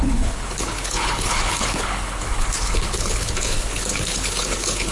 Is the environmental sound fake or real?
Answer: fake